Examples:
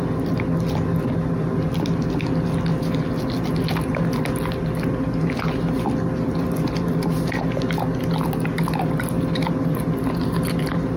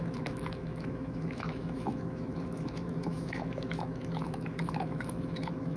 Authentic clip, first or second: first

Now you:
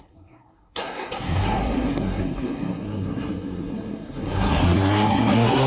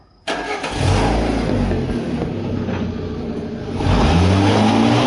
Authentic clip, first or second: second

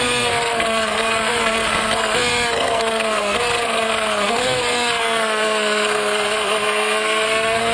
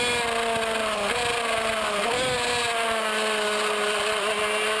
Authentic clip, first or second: second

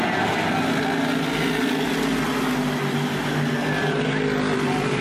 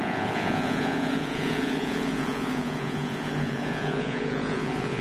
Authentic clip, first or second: first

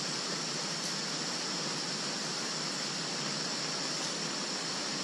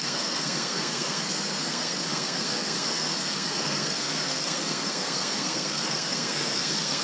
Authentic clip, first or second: first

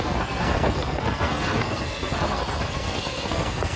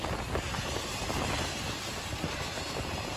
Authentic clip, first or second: second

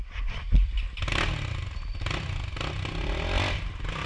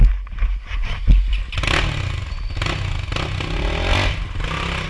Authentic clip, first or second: second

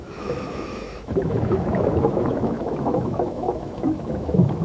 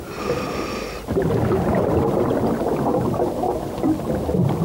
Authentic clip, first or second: second